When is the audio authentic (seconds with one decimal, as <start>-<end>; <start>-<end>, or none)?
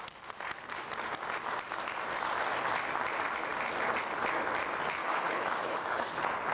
0.0-5.0; 6.1-6.5